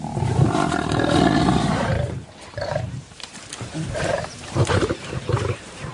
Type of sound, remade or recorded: remade